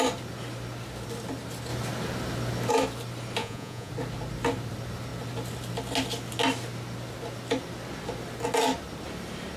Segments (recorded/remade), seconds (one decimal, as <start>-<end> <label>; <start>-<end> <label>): 0.0-3.4 recorded; 3.4-3.9 remade; 3.9-9.6 recorded